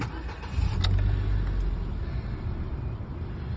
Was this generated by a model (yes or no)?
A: no